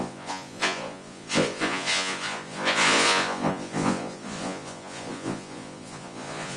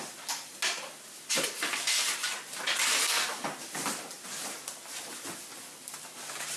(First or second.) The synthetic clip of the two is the first